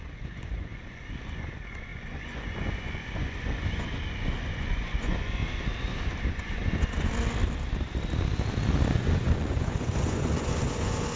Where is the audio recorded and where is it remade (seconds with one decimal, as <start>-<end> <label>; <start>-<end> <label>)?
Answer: 0.0-5.4 remade; 5.4-6.3 recorded; 6.3-7.1 remade; 7.1-9.0 recorded; 9.0-11.2 remade